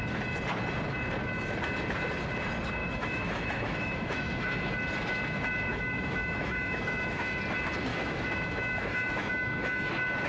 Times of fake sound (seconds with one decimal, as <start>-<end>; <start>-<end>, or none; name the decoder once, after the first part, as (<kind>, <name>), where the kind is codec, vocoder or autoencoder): 2.8-4.7 (autoencoder, DAC-VAE); 5.7-7.4; 7.9-9.9